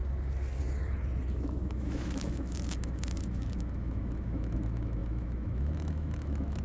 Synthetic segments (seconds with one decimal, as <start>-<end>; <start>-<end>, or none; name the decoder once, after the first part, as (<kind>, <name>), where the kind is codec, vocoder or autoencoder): 1.3-6.6 (autoencoder, DAC-VAE)